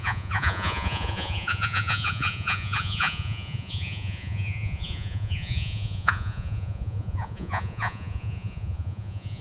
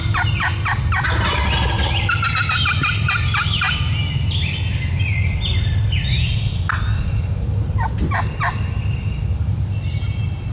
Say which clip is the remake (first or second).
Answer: first